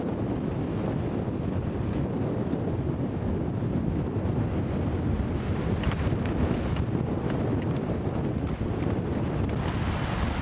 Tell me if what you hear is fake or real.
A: real